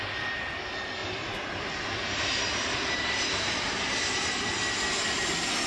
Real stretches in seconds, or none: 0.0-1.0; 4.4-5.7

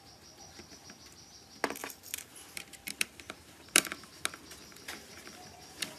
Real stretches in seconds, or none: 0.0-1.8; 4.2-4.7; 5.2-6.0

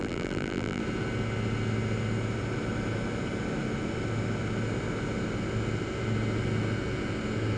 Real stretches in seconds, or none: 0.8-7.6

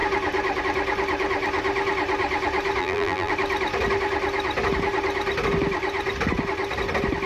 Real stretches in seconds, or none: 0.0-2.8; 3.3-7.3

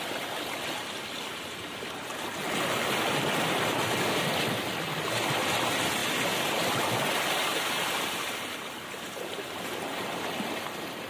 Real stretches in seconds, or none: 0.0-11.1

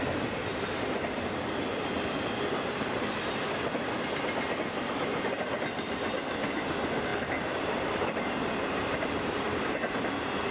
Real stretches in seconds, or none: 0.0-0.5; 1.3-7.1; 10.1-10.5